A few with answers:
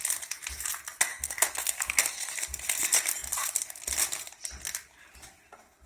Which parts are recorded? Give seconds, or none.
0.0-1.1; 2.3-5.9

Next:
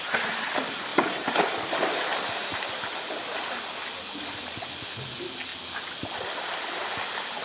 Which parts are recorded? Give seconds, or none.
0.0-7.4

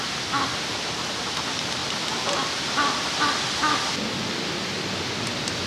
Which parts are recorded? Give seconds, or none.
0.0-5.7

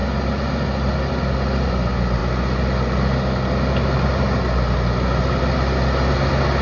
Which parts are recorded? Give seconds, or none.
0.0-6.6

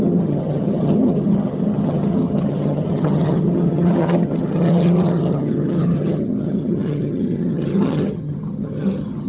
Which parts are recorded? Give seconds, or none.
none

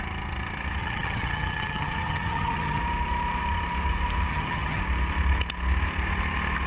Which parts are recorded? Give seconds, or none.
0.0-0.8; 2.8-4.3; 4.8-6.7

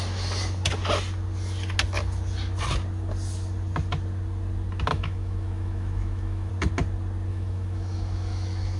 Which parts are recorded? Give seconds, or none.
0.0-4.9; 6.5-7.3